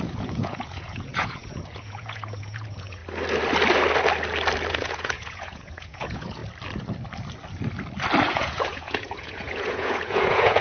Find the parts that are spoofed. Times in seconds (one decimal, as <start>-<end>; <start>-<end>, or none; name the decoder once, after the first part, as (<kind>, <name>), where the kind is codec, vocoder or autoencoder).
0.0-3.0 (vocoder, Vocos); 4.7-6.4; 8.3-10.6